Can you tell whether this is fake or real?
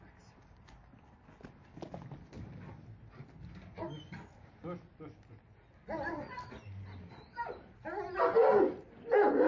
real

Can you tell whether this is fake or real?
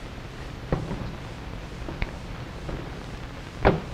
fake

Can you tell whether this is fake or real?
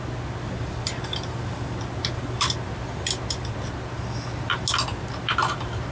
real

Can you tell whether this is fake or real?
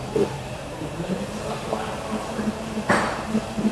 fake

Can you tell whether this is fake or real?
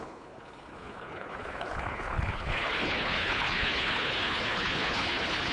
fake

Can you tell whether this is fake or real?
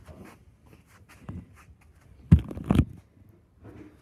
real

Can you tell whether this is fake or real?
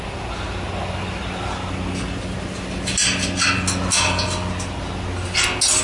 real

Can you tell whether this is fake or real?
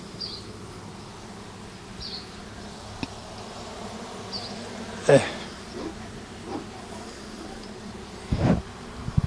real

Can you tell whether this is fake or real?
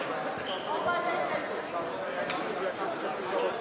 real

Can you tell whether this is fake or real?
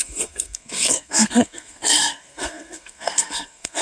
fake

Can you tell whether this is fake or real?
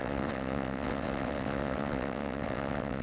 fake